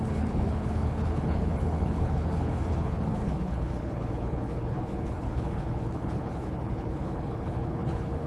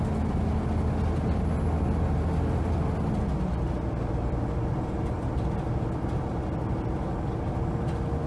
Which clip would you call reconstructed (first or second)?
first